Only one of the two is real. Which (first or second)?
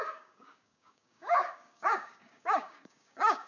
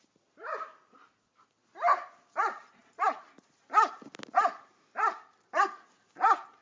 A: second